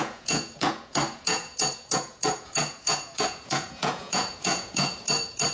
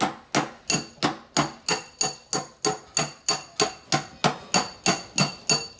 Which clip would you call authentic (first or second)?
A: second